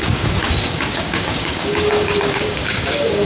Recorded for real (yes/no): no